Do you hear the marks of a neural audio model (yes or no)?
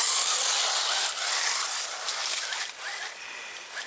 no